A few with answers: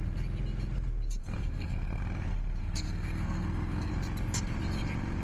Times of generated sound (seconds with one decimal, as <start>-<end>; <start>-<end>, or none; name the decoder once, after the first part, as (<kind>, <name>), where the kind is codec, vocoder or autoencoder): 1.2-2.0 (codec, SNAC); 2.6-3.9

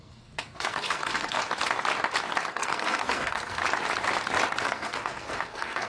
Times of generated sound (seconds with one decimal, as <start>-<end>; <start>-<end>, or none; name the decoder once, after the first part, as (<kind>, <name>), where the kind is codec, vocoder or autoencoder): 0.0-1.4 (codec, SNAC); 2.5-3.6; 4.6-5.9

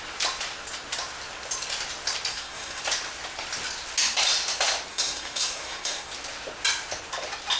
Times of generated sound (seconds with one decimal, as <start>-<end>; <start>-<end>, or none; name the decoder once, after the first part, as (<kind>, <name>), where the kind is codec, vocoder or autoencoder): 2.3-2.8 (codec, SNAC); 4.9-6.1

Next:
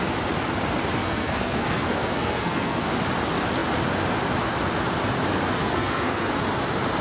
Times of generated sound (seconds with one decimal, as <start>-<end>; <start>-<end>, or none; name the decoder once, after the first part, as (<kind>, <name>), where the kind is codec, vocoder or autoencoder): 1.0-2.8 (codec, SNAC); 5.6-6.3

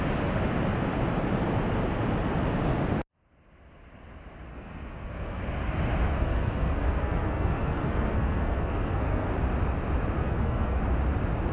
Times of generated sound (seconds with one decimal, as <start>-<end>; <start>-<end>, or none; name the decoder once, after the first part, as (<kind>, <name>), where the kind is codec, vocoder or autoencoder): 4.5-5.4 (codec, SNAC); 6.1-9.3; 10.2-10.8

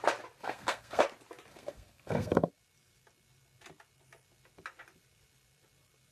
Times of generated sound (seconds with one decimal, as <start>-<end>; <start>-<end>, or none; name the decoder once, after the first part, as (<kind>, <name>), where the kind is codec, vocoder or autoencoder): 0.4-1.0 (codec, SNAC); 1.5-2.5